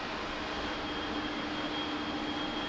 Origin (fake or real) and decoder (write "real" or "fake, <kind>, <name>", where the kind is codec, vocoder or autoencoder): real